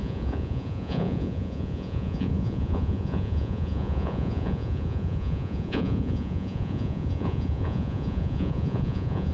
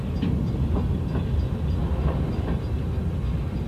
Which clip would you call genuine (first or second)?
second